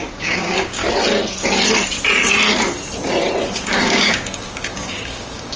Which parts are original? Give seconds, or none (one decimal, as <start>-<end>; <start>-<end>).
0.8-3.5